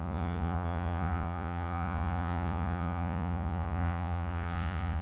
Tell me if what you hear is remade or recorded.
remade